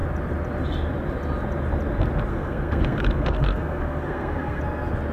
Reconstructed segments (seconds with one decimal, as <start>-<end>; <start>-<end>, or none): 2.3-4.6